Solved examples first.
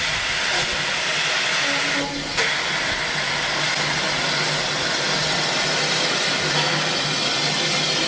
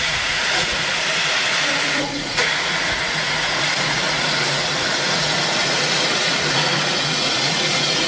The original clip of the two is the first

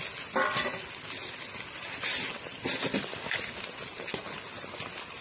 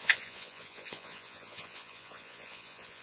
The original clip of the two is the first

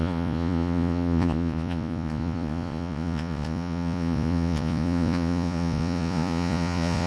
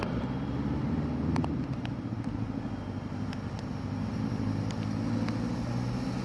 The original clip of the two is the second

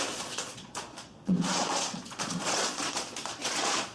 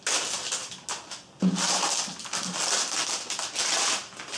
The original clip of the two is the second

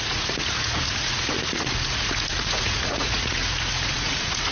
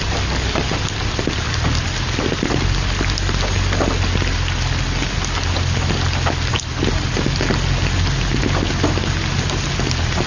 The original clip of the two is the second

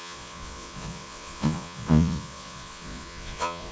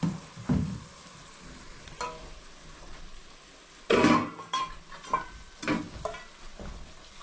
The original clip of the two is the second